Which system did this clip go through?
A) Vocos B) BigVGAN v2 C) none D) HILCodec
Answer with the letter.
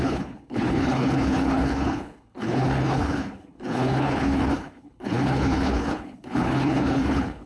D